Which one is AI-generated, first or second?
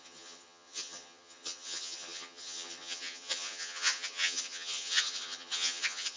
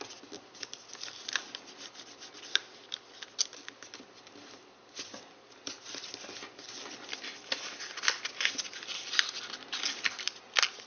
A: first